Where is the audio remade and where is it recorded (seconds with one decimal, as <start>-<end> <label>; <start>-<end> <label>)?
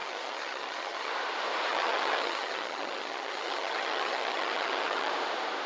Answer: 0.0-1.1 remade; 1.1-1.7 recorded; 1.7-5.1 remade; 5.1-5.7 recorded